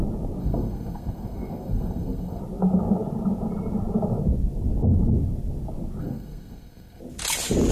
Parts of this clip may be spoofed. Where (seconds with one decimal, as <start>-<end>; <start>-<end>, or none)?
0.4-2.4; 6.0-7.0